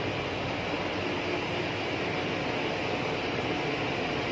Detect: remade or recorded recorded